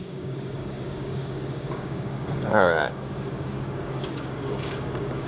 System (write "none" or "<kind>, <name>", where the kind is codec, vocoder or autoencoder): codec, DAC